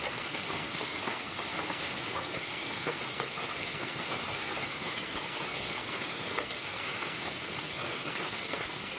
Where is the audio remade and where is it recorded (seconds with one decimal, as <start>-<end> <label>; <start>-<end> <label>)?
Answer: 0.0-9.0 remade